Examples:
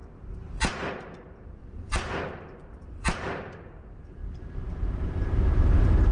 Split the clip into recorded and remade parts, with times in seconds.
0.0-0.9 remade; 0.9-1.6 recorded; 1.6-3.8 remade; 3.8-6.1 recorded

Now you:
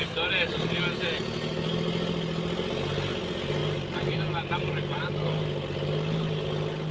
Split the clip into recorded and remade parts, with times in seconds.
0.0-3.6 recorded; 3.6-4.7 remade; 4.7-6.9 recorded